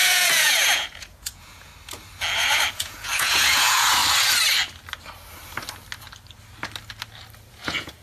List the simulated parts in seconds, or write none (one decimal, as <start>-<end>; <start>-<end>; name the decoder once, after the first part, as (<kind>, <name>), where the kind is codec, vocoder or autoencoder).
0.0-1.7 (vocoder, Vocos); 2.7-4.0; 7.5-8.0